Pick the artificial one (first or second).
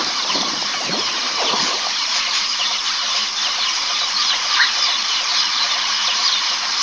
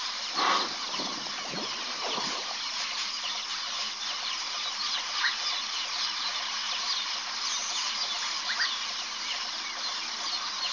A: first